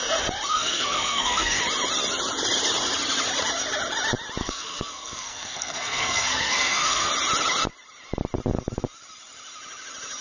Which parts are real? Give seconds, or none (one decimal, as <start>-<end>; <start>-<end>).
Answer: 0.0-0.5; 1.6-4.4; 7.1-10.2